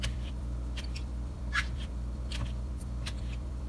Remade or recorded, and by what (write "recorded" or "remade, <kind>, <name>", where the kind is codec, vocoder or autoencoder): remade, vocoder, BigVGAN v2